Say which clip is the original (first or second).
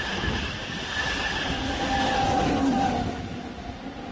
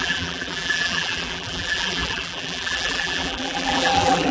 first